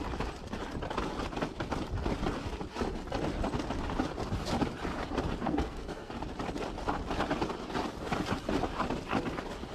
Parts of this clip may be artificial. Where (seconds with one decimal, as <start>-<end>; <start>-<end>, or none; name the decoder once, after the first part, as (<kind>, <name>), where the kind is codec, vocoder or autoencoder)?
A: 5.4-6.1 (codec, SNAC)